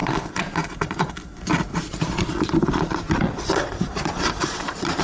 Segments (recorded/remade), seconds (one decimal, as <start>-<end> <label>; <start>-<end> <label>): 0.0-1.1 remade; 1.1-1.7 recorded; 1.7-5.0 remade